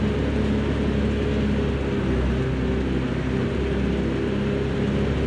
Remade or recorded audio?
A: recorded